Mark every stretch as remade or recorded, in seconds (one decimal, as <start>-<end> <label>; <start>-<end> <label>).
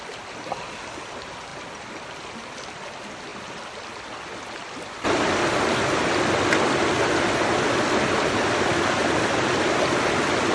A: 0.0-10.5 recorded